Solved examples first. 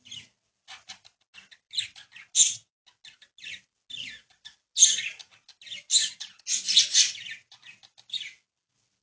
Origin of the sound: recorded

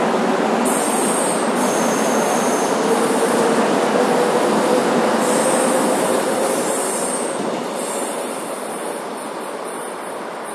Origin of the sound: recorded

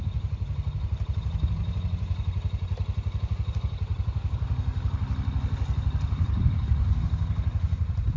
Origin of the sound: recorded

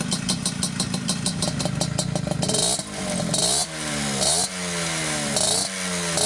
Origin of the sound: recorded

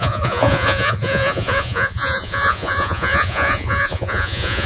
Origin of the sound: remade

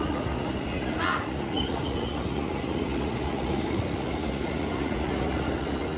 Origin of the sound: remade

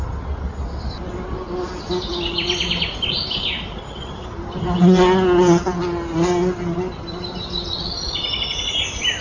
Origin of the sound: recorded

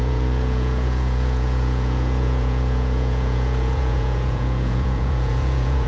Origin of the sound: remade